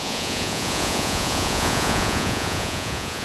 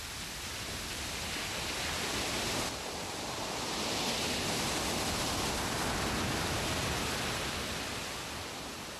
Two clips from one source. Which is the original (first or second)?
second